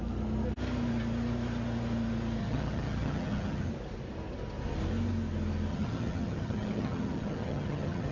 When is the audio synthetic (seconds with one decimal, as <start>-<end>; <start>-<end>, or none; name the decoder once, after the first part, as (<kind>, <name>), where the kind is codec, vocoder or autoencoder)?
2.4-3.7 (vocoder, HiFi-GAN); 5.7-8.1